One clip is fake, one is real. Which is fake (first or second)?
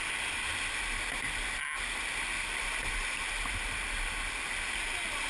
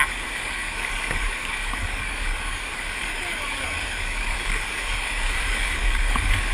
second